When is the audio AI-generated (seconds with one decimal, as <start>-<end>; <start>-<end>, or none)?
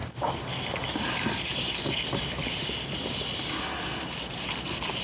none